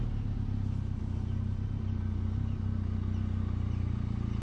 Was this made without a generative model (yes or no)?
yes